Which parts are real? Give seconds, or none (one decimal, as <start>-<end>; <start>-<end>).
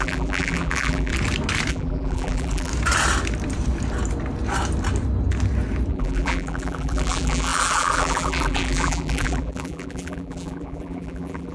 1.1-1.7; 2.7-5.9